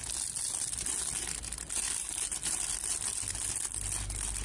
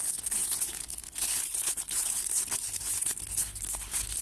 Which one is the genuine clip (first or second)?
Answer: first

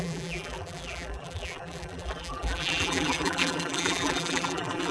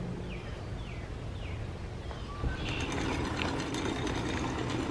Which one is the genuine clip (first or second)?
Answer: second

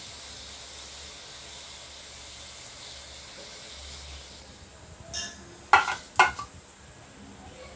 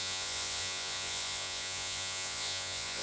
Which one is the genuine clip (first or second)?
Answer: first